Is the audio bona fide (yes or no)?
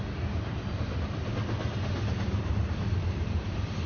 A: yes